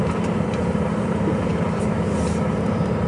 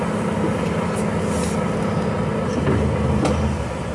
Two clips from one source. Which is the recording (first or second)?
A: second